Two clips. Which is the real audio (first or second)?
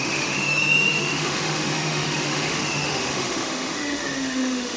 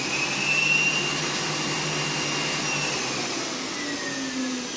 second